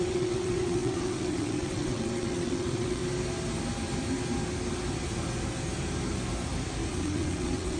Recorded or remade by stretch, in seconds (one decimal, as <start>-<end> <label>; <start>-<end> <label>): 0.0-3.0 remade; 3.0-6.9 recorded; 6.9-7.8 remade